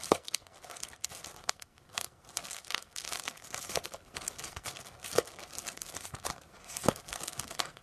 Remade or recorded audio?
remade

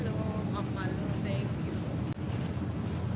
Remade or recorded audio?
recorded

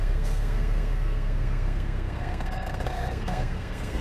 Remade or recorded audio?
remade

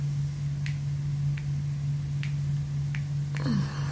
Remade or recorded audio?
recorded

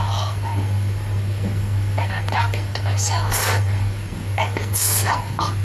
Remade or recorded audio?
remade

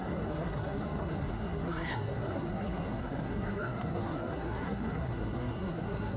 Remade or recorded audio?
remade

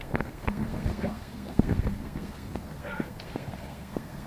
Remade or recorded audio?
remade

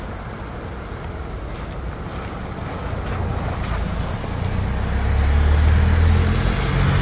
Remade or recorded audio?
recorded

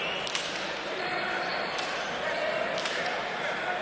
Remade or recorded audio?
recorded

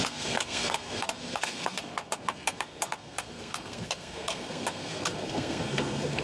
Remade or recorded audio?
remade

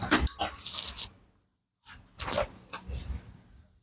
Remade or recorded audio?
recorded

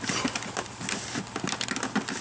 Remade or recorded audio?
recorded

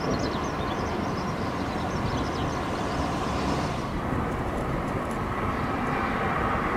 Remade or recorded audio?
recorded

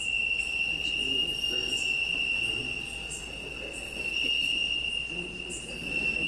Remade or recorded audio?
recorded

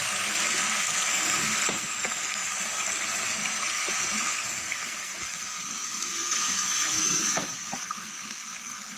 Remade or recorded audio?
remade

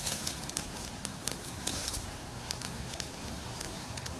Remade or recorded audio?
remade